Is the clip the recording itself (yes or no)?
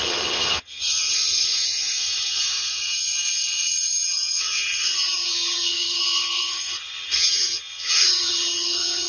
no